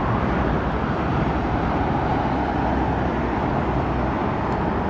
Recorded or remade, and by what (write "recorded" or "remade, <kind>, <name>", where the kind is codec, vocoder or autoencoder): recorded